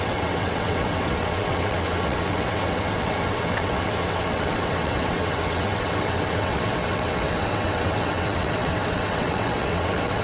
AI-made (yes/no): yes